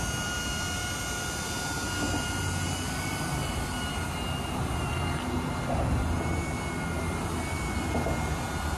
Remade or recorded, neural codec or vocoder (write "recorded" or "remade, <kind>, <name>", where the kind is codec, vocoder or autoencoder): recorded